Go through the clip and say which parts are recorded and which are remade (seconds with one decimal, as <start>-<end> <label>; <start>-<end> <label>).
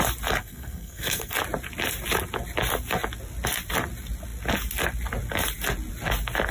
0.0-0.4 recorded; 0.4-1.3 remade; 1.3-6.5 recorded